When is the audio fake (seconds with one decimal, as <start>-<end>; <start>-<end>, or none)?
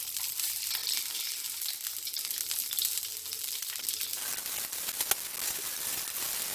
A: none